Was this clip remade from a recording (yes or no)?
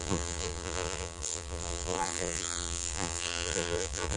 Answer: yes